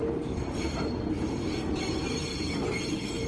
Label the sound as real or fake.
fake